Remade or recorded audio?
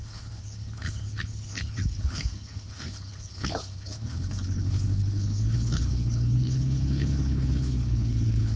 remade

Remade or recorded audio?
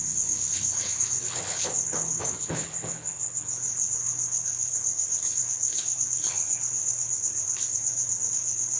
remade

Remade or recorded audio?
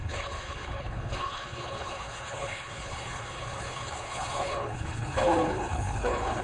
remade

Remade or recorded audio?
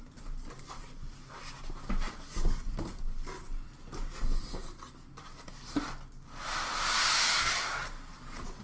recorded